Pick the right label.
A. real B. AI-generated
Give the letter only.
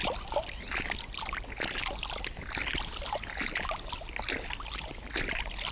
A